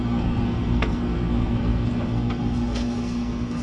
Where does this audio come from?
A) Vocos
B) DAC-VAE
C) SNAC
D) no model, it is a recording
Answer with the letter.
C